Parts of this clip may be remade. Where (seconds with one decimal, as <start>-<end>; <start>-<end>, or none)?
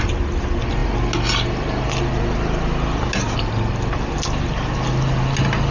none